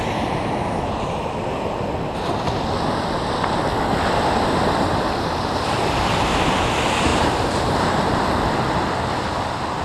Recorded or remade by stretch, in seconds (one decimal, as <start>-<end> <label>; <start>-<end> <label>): 0.0-7.1 recorded; 7.1-8.0 remade; 8.0-9.8 recorded